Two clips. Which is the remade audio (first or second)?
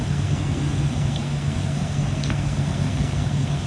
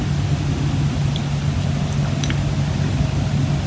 first